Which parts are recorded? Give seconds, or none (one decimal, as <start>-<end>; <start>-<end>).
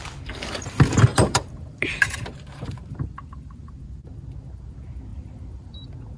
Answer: 0.0-1.1; 3.7-5.1; 5.8-6.2